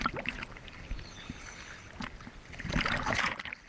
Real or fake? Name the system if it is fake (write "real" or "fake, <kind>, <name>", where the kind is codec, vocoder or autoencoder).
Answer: real